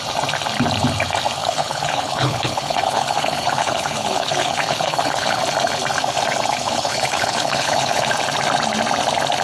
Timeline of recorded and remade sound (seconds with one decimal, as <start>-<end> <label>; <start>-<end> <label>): 0.0-1.4 recorded; 1.4-5.4 remade; 5.4-6.5 recorded; 6.5-8.1 remade; 8.1-9.4 recorded